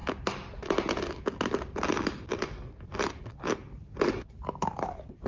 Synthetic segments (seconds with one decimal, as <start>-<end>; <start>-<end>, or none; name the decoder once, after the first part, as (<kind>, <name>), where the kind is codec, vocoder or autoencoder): none